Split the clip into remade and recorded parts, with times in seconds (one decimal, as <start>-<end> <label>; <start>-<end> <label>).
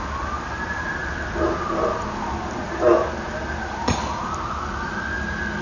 0.0-5.6 recorded